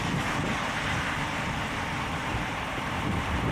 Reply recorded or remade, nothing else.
recorded